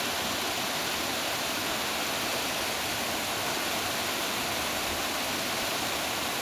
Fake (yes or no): no